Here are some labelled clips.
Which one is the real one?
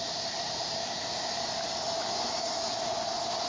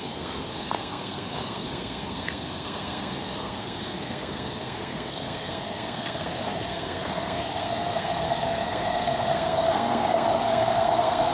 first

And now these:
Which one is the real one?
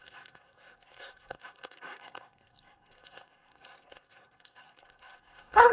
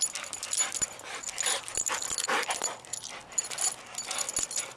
second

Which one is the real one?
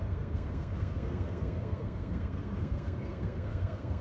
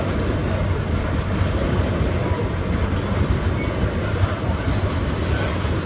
second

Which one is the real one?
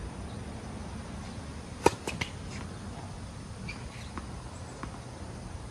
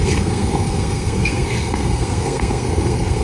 first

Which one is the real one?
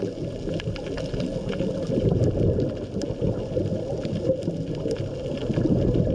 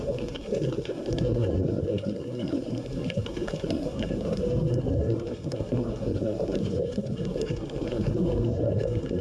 first